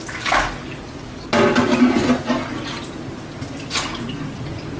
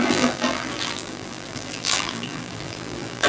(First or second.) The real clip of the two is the first